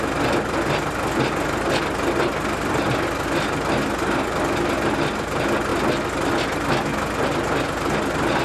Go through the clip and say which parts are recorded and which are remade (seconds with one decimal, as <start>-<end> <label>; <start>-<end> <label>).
0.0-8.4 recorded